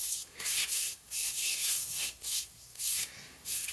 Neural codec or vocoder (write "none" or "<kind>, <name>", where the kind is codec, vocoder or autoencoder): codec, SNAC